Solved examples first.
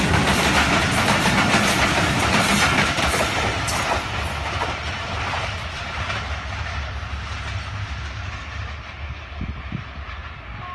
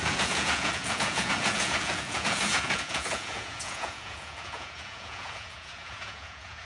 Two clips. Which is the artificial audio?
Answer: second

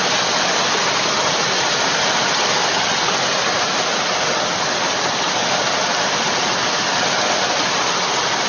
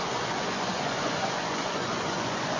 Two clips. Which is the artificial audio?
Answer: second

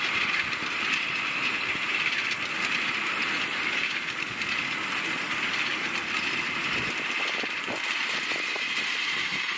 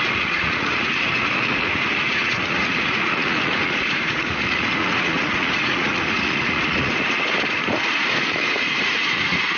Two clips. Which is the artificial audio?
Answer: second